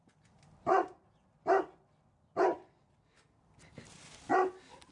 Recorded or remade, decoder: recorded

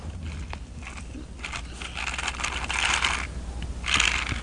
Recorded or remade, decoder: recorded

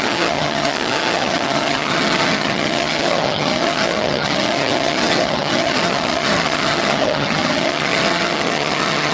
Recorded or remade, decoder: remade, vocoder, HiFi-GAN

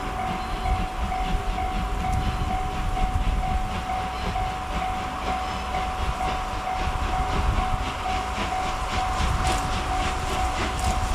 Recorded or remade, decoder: recorded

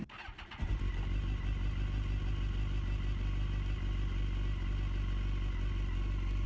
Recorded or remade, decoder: recorded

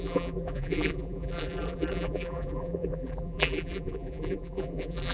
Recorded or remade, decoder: remade, vocoder, BigVGAN v2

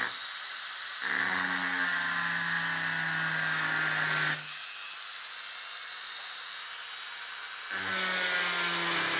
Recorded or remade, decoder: recorded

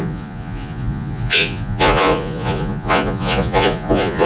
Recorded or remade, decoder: remade, vocoder, Vocos